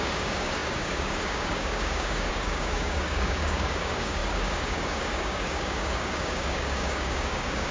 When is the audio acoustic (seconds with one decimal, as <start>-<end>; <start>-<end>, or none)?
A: none